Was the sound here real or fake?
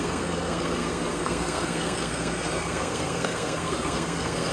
fake